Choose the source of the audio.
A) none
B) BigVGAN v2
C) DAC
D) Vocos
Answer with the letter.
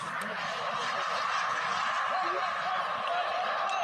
A